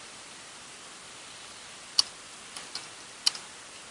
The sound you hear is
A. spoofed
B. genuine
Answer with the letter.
B